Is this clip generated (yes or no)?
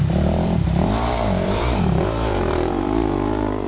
yes